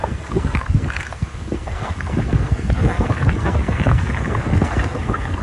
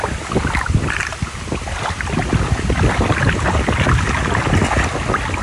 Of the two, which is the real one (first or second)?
second